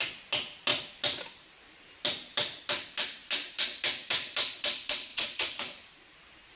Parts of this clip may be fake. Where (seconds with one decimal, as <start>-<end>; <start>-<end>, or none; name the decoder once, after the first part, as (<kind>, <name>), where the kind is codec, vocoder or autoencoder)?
5.1-5.6 (vocoder, Vocos)